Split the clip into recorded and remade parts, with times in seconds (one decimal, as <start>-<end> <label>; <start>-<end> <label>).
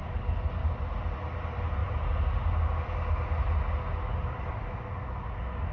0.0-5.7 recorded